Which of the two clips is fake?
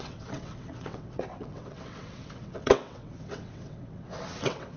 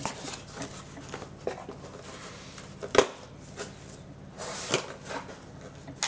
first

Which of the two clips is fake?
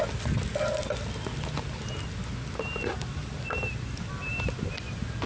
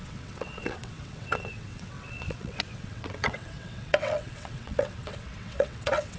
second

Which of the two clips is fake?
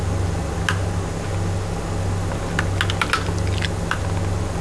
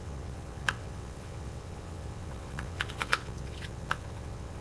second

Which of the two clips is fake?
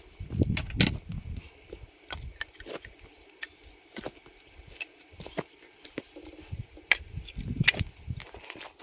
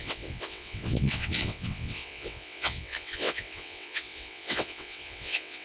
second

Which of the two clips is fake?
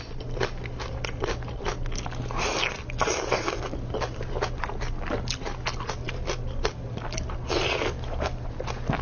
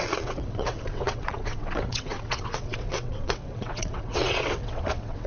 second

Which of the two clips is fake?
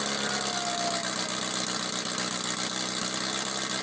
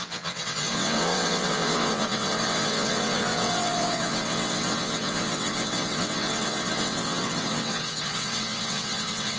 second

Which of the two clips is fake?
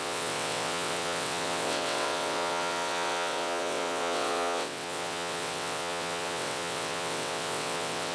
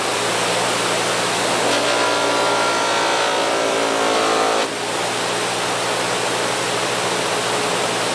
first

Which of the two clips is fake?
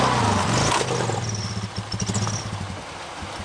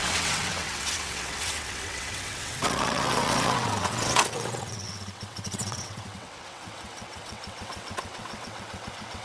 second